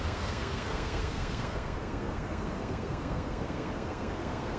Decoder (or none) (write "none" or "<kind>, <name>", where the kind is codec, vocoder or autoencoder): codec, SNAC